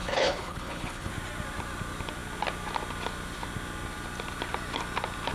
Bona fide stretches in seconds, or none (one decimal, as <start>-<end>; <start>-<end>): 1.1-5.3